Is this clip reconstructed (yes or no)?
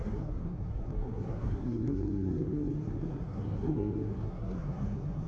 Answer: yes